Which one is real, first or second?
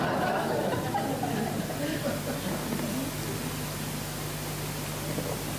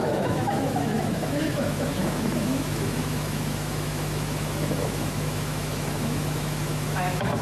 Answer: first